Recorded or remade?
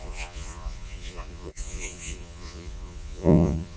remade